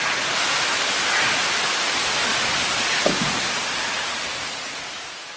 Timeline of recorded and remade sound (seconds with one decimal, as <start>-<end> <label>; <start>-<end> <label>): 0.0-5.4 recorded